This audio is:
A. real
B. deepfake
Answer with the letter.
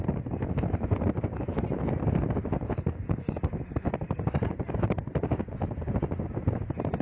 A